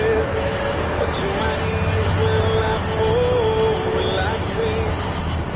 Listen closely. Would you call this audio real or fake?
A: real